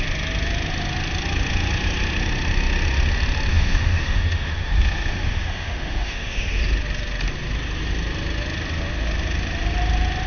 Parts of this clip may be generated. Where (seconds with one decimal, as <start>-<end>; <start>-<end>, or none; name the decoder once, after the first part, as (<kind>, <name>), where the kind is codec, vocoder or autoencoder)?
3.5-6.6 (autoencoder, DAC-VAE)